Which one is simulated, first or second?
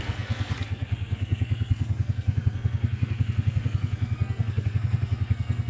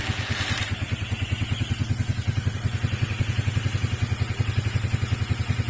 first